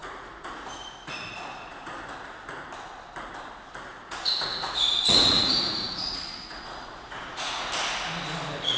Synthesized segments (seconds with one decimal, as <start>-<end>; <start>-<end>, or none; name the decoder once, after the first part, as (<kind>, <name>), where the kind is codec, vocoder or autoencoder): 0.0-1.9 (vocoder, Vocos); 3.9-7.7